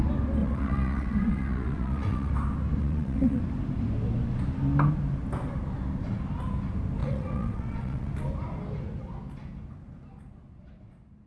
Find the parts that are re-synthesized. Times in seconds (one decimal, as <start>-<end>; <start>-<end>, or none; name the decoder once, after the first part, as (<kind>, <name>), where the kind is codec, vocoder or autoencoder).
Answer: 0.4-2.3 (vocoder, WaveNeXt); 2.8-3.4; 7.0-8.1